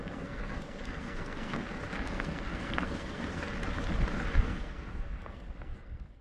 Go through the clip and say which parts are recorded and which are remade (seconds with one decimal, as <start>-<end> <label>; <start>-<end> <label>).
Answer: 0.0-3.5 remade; 3.5-4.4 recorded; 4.4-6.2 remade